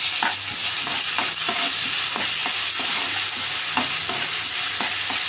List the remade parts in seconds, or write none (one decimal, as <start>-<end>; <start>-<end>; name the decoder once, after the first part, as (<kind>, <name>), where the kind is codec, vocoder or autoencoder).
none